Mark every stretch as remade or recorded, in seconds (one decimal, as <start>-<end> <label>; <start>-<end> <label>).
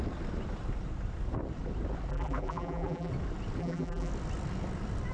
0.0-2.1 recorded; 2.1-3.1 remade; 3.1-3.6 recorded; 3.6-4.1 remade; 4.1-5.1 recorded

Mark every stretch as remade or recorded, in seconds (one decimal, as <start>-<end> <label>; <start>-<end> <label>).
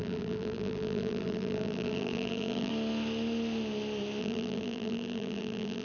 0.0-2.7 remade; 2.7-4.2 recorded; 4.2-5.8 remade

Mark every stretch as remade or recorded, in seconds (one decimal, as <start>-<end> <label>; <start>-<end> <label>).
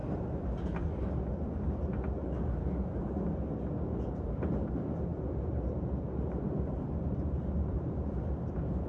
0.0-4.1 recorded; 4.1-5.1 remade; 5.1-5.7 recorded; 5.7-8.9 remade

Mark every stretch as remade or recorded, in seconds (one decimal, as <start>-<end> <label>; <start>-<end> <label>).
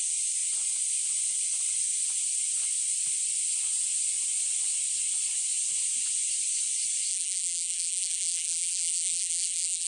0.0-7.1 recorded; 7.1-9.9 remade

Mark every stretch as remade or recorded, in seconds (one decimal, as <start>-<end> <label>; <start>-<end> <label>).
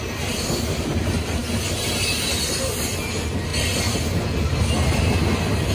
0.0-5.7 recorded